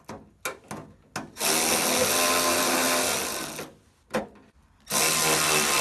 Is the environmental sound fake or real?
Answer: real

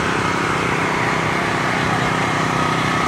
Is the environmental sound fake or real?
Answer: fake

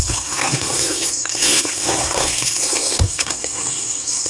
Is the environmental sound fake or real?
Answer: fake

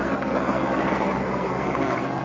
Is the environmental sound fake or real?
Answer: fake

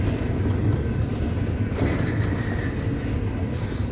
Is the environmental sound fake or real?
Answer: real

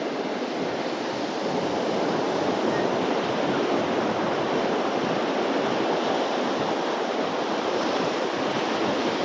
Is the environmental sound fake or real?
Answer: real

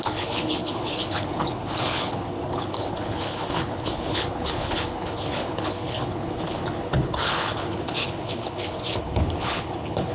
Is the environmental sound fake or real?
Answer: fake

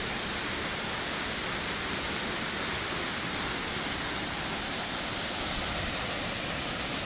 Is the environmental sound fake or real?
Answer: real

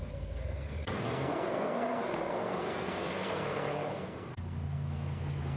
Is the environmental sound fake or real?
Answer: fake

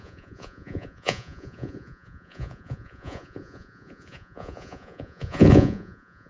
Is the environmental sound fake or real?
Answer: fake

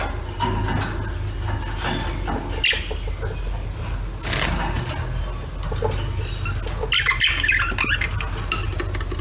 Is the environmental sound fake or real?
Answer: real